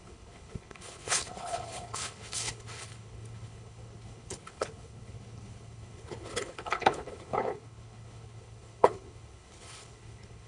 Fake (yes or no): yes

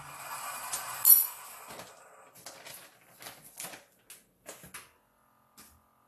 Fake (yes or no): no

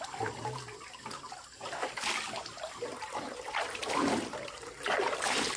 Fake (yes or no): no